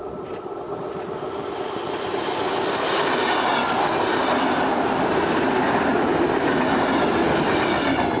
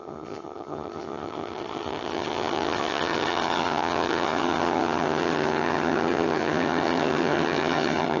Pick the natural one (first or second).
first